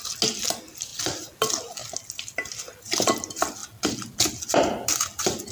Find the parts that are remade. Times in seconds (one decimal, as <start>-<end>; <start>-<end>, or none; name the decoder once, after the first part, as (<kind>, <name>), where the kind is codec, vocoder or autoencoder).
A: none